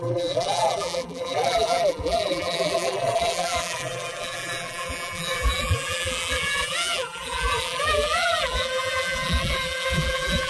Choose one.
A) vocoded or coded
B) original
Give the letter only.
A